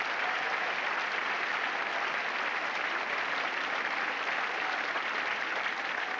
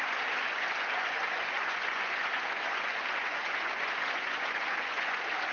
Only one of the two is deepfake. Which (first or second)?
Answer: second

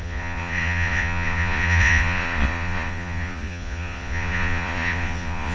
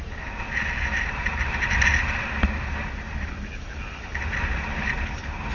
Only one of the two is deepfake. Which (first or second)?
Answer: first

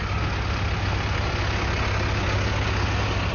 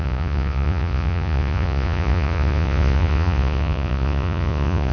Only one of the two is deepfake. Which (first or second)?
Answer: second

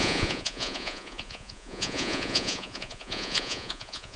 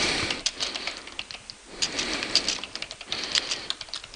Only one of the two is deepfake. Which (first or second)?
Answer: first